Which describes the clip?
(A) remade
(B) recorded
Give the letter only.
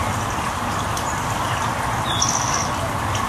B